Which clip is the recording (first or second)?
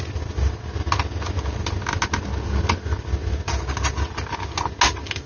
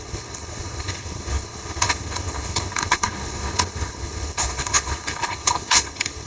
first